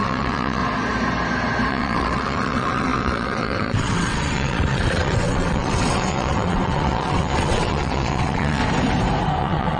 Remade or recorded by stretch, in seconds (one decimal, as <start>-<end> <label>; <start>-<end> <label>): 0.0-0.6 remade; 0.6-1.7 recorded; 1.7-8.6 remade; 8.6-9.4 recorded; 9.4-9.8 remade